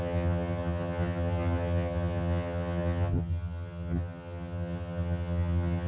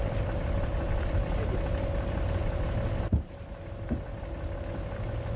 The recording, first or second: second